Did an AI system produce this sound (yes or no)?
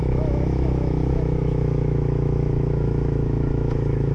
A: yes